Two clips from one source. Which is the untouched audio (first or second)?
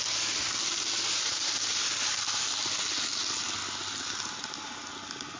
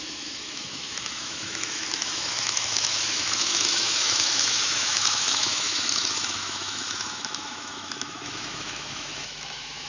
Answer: first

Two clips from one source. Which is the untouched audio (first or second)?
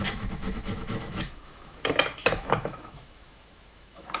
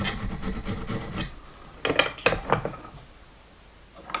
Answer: second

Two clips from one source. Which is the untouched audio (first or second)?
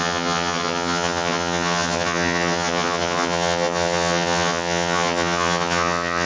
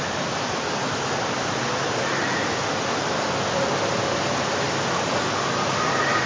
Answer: second